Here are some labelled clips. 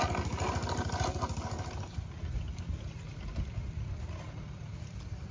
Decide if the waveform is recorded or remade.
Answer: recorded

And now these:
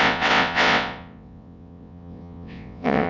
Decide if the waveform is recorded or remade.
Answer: remade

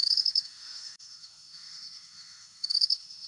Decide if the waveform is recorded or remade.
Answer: remade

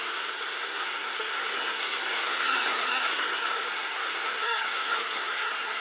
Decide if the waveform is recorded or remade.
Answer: remade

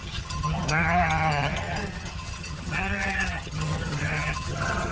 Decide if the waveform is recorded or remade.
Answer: remade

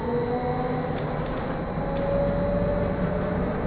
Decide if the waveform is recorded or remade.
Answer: recorded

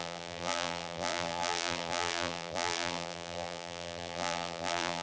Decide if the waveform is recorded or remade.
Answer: remade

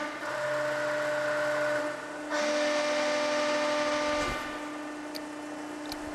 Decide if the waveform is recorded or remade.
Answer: recorded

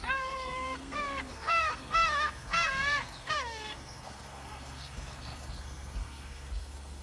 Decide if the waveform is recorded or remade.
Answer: remade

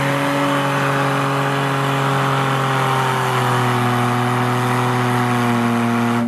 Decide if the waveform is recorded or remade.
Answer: recorded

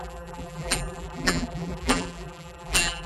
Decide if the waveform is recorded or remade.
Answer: remade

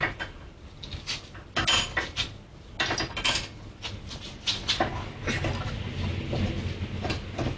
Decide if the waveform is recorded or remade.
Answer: recorded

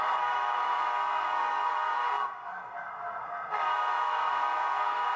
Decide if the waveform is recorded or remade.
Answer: remade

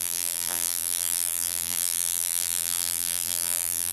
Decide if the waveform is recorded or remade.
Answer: remade